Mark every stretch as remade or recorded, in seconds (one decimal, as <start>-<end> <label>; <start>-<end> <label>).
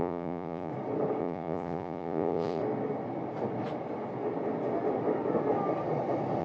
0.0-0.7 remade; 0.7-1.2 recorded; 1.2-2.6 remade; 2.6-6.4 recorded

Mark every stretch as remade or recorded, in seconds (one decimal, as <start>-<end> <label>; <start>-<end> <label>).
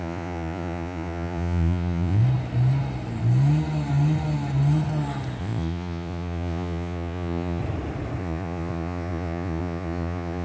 0.0-2.2 remade; 2.2-5.4 recorded; 5.4-7.6 remade; 7.6-8.2 recorded; 8.2-10.4 remade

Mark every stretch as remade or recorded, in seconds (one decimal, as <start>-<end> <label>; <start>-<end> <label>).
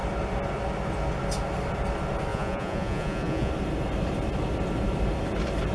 0.0-2.3 recorded; 2.3-3.5 remade; 3.5-5.7 recorded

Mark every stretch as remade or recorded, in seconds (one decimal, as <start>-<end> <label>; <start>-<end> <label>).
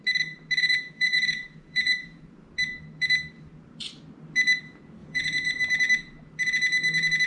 0.0-0.6 recorded; 0.6-2.2 remade; 2.2-5.0 recorded; 5.0-5.6 remade; 5.6-7.3 recorded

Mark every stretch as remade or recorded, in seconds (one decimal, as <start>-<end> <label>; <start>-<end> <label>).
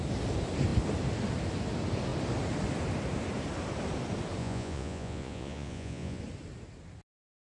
0.0-4.4 recorded; 4.4-6.2 remade; 6.2-7.5 recorded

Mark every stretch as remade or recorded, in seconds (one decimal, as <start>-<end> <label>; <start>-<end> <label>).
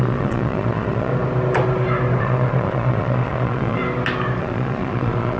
0.0-1.1 remade; 1.1-2.2 recorded; 2.2-3.8 remade; 3.8-4.4 recorded; 4.4-5.4 remade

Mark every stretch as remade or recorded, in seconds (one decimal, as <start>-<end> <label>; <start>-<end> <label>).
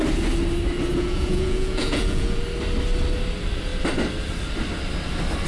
0.0-0.9 recorded; 0.9-2.4 remade; 2.4-5.5 recorded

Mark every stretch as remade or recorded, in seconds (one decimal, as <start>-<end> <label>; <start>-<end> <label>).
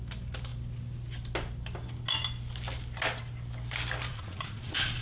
0.0-4.1 recorded; 4.1-5.0 remade